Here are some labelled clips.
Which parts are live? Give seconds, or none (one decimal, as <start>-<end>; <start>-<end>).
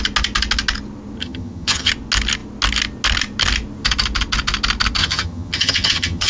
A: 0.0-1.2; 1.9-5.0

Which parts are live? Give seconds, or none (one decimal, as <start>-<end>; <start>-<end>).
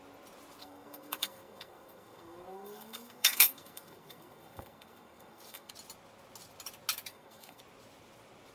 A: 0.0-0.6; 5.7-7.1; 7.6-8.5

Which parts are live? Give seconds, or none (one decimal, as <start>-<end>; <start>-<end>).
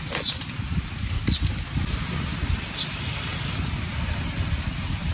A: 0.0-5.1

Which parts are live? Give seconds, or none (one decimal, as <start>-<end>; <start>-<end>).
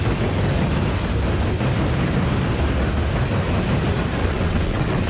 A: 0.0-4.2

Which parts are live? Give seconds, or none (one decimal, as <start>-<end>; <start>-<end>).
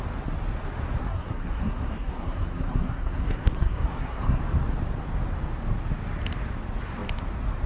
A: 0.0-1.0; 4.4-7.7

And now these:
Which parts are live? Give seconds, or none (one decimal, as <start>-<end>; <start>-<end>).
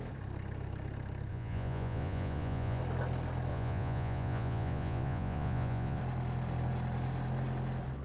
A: 0.0-1.3; 2.8-3.5; 6.0-8.0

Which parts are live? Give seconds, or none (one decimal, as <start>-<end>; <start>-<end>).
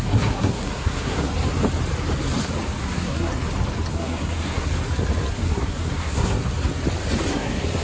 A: 1.3-2.8; 3.3-3.9; 4.7-5.3; 6.4-7.3